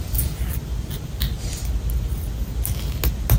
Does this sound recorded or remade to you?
recorded